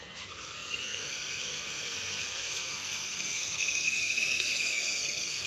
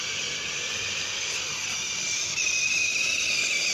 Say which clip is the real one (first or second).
second